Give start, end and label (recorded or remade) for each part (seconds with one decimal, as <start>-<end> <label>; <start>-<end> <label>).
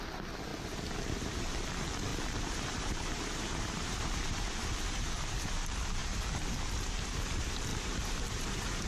0.0-0.5 remade; 0.5-1.3 recorded; 1.3-7.7 remade; 7.7-8.3 recorded; 8.3-8.9 remade